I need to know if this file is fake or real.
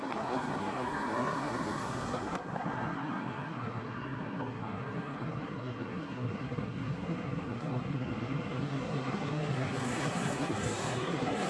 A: fake